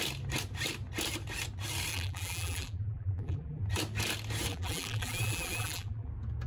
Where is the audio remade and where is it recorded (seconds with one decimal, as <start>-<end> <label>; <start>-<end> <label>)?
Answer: 0.0-1.9 recorded; 1.9-3.6 remade; 3.6-4.5 recorded; 4.5-6.1 remade; 6.1-6.5 recorded